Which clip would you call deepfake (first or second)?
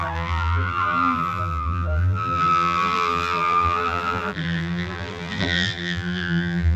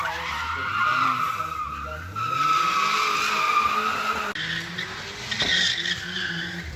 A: first